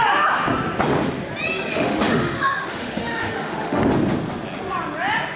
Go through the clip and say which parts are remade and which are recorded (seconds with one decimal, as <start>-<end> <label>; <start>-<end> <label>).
0.0-1.7 recorded; 1.7-3.8 remade; 3.8-5.4 recorded